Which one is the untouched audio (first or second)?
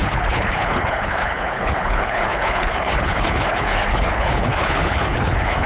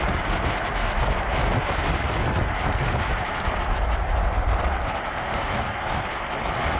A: second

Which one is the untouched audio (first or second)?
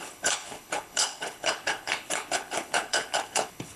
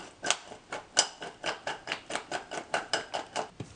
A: second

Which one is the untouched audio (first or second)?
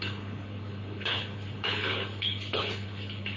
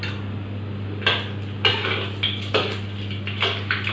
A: second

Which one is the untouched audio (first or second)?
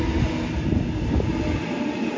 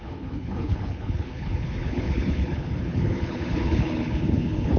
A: first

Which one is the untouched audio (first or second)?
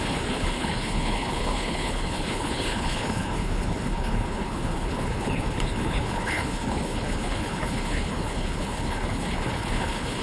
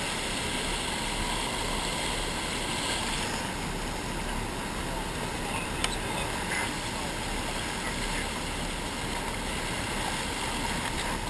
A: second